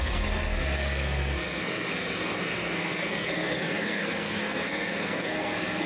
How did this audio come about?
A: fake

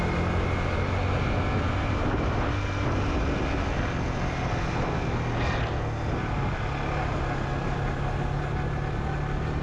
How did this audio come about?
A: real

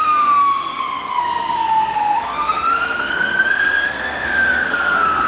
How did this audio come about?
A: fake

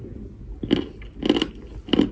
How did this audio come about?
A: real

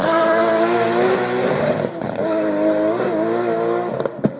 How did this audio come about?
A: real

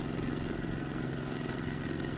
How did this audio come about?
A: fake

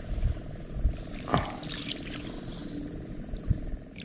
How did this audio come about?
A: real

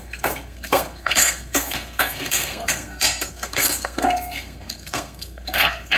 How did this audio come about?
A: fake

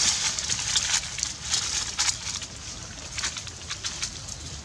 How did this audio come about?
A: real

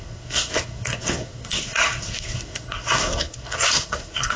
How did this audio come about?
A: fake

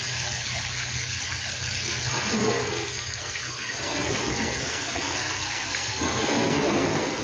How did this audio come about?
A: fake